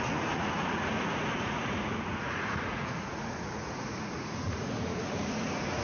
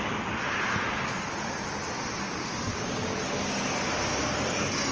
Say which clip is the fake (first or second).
first